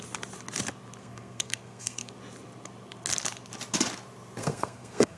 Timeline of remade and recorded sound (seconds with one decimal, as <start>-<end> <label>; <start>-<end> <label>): 0.0-1.0 recorded; 1.0-2.1 remade; 2.1-4.4 recorded; 4.4-5.2 remade